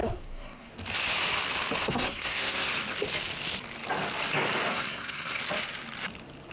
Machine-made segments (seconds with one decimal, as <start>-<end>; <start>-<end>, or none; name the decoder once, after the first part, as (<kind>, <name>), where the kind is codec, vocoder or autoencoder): 0.0-0.7 (codec, SNAC); 1.8-2.7; 4.7-5.4

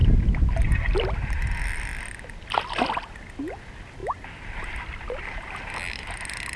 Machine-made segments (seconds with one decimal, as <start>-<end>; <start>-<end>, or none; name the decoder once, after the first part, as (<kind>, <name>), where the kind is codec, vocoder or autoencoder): none

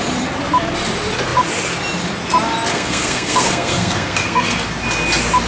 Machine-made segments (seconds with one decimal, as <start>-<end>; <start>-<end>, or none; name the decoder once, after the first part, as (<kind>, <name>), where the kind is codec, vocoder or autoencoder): 2.7-4.7 (codec, SNAC)

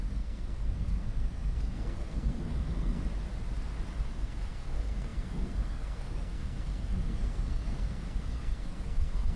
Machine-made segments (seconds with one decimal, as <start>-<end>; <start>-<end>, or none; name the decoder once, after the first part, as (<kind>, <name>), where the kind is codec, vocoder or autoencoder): 0.0-3.0 (codec, SNAC); 4.0-9.4

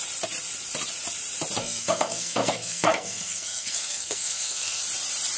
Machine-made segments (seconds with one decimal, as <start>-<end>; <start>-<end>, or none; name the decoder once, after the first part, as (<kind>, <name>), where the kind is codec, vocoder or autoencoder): 1.6-4.8 (codec, SNAC)

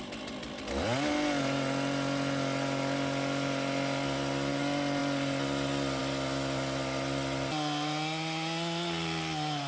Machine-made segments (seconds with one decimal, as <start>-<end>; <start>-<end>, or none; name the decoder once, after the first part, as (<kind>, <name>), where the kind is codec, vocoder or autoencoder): none

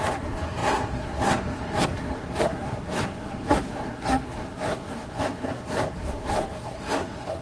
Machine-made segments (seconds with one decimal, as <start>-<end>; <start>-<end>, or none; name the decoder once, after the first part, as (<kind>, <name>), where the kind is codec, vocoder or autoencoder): 0.0-7.4 (codec, SNAC)

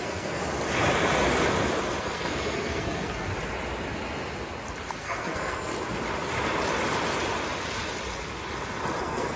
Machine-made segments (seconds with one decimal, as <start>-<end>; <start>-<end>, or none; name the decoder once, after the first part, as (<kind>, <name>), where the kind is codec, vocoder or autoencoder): 0.0-0.4 (codec, SNAC); 2.0-3.3; 4.9-5.7; 9.0-9.4